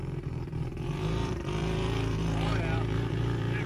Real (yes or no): no